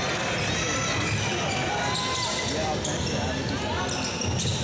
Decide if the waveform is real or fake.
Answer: real